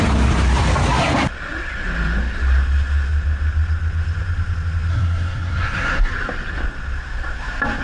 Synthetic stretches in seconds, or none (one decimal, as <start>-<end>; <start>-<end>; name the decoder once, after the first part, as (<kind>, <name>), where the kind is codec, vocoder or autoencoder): 4.9-6.1 (codec, SNAC)